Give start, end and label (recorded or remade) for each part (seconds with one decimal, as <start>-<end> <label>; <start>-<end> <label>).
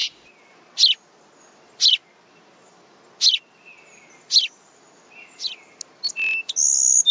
0.0-7.1 recorded